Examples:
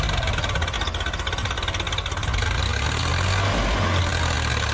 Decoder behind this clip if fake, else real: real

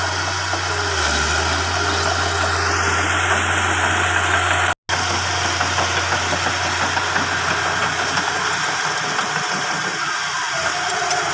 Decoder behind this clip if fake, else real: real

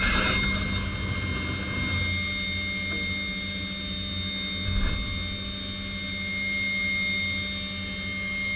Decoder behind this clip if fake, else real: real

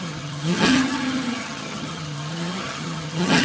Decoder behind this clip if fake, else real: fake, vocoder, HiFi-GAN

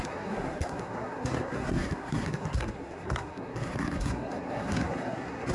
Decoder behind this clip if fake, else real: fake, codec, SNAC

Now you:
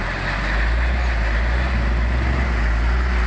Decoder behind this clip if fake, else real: real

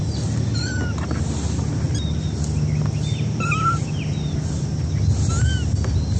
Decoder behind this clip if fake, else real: real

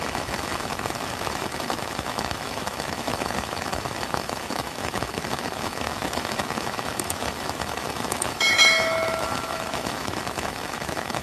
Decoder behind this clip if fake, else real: fake, autoencoder, DAC-VAE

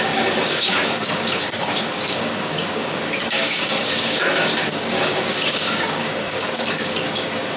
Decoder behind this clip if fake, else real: fake, codec, DAC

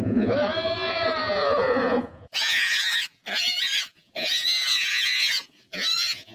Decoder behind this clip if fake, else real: fake, vocoder, Vocos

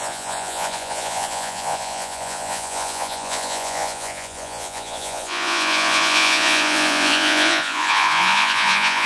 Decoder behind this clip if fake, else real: fake, vocoder, Vocos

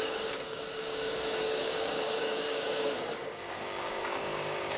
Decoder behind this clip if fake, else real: fake, codec, DAC